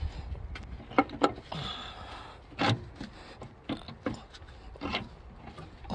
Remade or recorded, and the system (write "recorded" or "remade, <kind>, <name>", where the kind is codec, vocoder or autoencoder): recorded